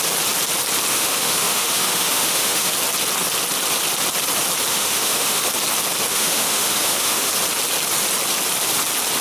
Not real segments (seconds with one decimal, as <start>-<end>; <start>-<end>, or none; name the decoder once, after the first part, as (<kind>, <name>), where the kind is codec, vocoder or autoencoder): 0.9-2.7 (autoencoder, DAC-VAE); 4.7-5.4; 6.1-7.3